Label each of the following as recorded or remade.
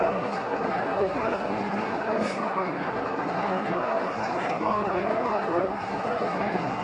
remade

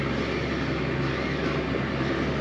recorded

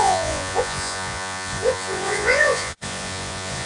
remade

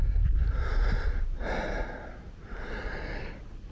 recorded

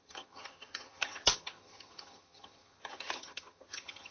remade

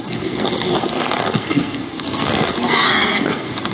remade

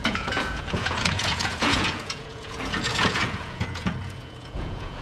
remade